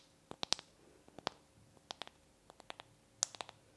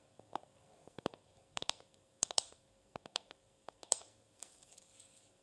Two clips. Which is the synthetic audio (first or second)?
second